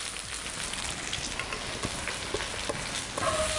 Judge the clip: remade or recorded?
recorded